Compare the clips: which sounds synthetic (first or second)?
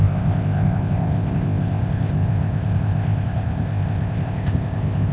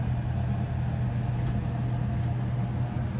first